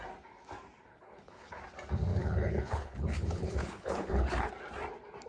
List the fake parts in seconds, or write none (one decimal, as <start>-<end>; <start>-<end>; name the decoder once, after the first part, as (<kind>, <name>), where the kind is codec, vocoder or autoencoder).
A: 0.9-1.6 (codec, HILCodec); 2.1-4.5